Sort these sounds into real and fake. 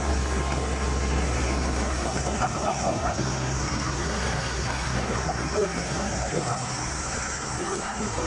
fake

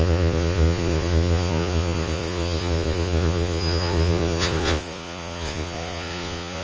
fake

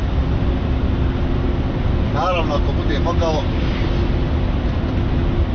real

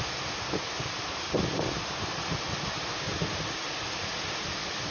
real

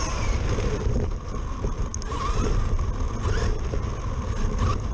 real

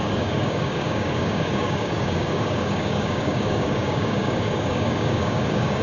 fake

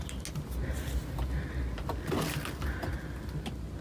real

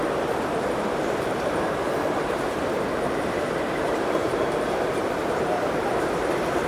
fake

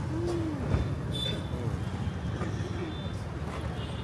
real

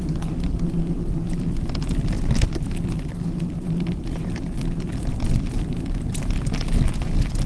real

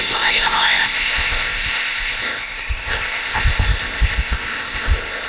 fake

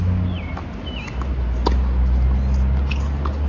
real